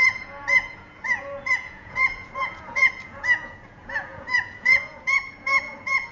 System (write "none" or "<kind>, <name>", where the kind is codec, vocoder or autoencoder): vocoder, Vocos